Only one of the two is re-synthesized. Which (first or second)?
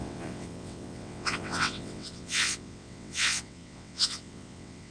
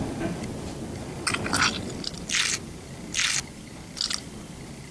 first